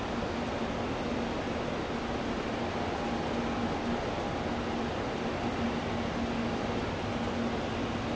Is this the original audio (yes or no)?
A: yes